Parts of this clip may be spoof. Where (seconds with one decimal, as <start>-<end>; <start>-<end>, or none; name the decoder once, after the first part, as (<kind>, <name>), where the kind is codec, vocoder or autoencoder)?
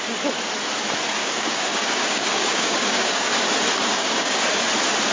1.2-3.3 (codec, DAC); 3.9-4.4